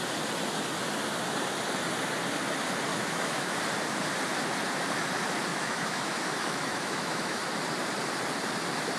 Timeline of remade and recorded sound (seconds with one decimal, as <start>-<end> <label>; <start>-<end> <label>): 0.0-2.9 recorded; 2.9-3.6 remade; 3.6-5.5 recorded; 5.5-7.4 remade; 7.4-9.0 recorded